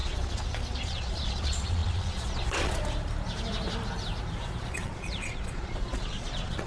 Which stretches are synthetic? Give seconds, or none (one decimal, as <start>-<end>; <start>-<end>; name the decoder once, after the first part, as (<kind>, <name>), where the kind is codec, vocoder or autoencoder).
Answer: 0.0-2.8 (vocoder, Vocos); 4.6-6.7